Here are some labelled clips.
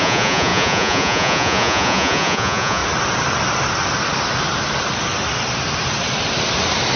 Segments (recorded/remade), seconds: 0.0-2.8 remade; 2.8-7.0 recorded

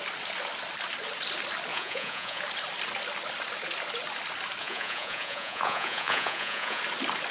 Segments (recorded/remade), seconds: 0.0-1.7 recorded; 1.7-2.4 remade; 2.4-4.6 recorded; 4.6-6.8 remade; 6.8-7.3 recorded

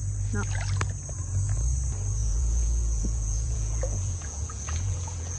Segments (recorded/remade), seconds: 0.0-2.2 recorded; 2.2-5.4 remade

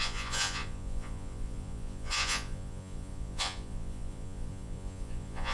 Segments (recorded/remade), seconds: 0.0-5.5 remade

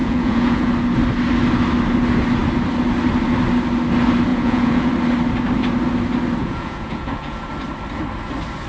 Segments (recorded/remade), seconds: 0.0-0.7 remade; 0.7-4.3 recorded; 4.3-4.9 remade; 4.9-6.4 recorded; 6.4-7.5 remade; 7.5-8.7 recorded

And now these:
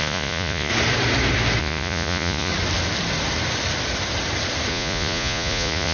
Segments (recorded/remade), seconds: 0.0-0.7 remade; 0.7-1.6 recorded; 1.6-2.5 remade; 2.5-4.7 recorded; 4.7-5.9 remade

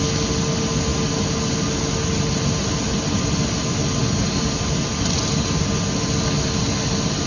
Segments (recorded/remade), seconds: 0.0-7.3 recorded

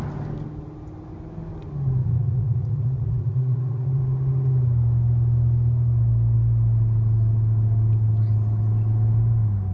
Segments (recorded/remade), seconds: 0.0-2.0 recorded; 2.0-4.0 remade; 4.0-9.7 recorded